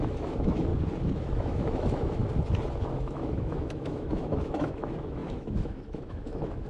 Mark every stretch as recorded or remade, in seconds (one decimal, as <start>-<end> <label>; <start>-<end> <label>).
0.0-0.7 remade; 0.7-1.3 recorded; 1.3-2.2 remade; 2.2-3.0 recorded; 3.0-6.7 remade

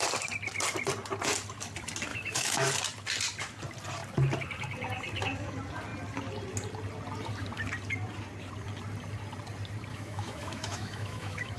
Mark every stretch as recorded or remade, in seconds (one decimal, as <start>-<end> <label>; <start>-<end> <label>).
0.0-2.1 recorded; 2.1-2.7 remade; 2.7-9.9 recorded; 9.9-11.6 remade